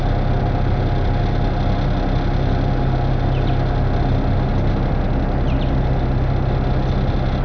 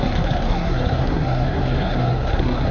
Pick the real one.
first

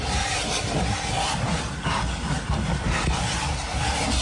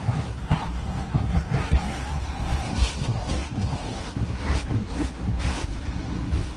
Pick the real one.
first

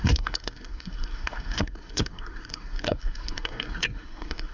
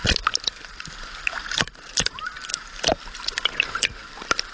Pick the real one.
second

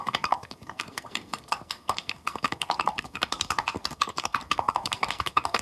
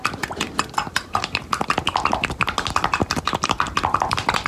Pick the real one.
second